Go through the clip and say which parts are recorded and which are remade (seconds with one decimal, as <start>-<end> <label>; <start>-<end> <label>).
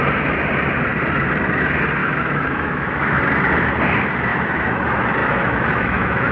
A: 0.0-2.0 recorded; 2.0-3.2 remade; 3.2-4.3 recorded; 4.3-4.8 remade; 4.8-5.2 recorded; 5.2-6.3 remade